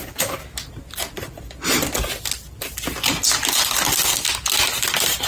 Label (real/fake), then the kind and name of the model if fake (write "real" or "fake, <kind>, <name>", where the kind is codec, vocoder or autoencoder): real